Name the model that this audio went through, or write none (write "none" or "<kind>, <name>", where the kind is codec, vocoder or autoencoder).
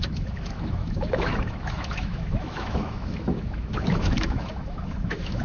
autoencoder, DAC-VAE